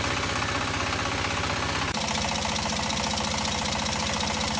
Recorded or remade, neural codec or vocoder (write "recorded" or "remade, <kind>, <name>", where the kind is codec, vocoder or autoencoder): recorded